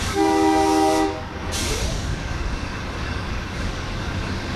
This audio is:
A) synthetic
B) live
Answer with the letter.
A